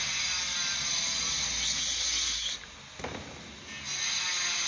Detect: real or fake real